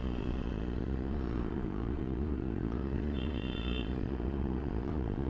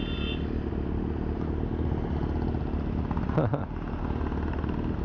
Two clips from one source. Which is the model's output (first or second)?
first